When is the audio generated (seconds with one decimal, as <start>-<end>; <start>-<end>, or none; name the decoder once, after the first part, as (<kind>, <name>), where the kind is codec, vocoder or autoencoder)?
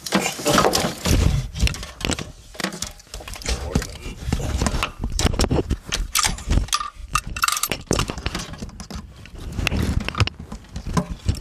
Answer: 2.6-6.5 (vocoder, BigVGAN v2); 7.0-8.6